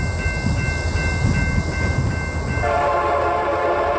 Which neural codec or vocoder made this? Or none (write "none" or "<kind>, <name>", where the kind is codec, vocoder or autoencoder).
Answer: none